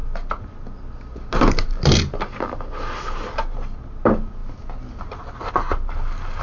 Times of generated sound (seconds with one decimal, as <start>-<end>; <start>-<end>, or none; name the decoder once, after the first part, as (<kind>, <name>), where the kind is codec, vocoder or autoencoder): none